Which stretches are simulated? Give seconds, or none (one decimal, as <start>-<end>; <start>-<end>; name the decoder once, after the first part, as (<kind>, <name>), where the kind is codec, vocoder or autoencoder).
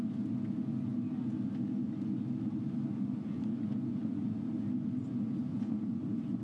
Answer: 3.2-4.5 (vocoder, Vocos); 5.5-6.4